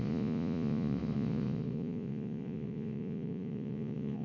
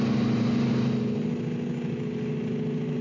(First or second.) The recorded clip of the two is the second